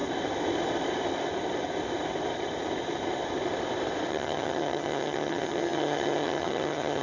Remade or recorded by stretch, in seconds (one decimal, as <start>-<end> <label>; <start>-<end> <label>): 0.0-4.1 recorded; 4.1-7.0 remade